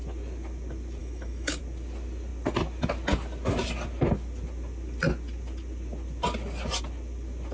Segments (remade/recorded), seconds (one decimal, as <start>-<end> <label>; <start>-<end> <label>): 0.0-1.0 recorded; 1.0-1.6 remade; 1.6-7.5 recorded